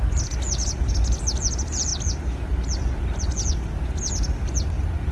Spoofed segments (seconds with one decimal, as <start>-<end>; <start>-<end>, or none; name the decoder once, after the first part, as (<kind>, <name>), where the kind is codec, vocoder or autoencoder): none

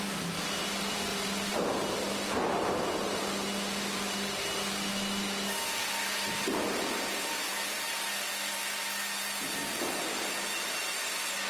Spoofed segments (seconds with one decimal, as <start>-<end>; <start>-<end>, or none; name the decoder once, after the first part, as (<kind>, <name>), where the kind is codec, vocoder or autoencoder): 1.1-1.8 (vocoder, BigVGAN v2)